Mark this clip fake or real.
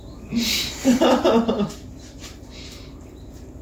fake